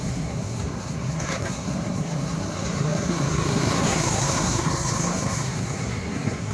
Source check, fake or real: fake